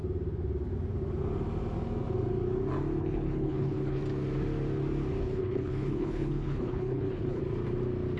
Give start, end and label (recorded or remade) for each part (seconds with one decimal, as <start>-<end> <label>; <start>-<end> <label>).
0.0-3.0 recorded; 3.0-4.0 remade; 4.0-5.2 recorded; 5.2-7.4 remade; 7.4-8.2 recorded